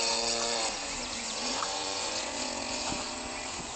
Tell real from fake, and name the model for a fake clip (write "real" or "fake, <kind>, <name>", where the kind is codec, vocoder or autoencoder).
fake, vocoder, Vocos